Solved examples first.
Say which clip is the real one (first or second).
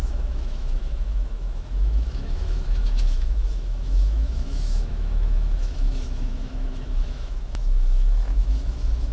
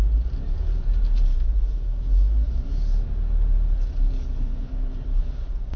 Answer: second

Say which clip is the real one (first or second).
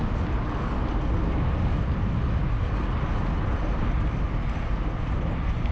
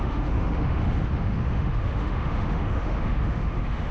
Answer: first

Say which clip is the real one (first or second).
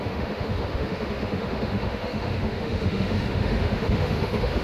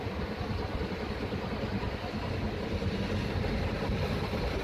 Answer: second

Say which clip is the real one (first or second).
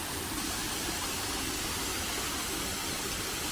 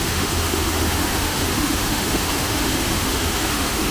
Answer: first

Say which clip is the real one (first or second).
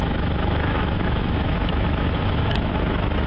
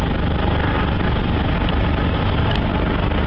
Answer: second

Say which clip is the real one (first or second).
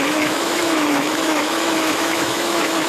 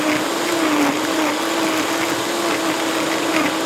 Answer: second